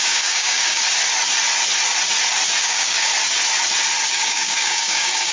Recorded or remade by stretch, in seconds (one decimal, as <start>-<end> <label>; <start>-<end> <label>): 0.0-0.8 remade; 0.8-2.6 recorded; 2.6-3.1 remade; 3.1-4.1 recorded; 4.1-5.3 remade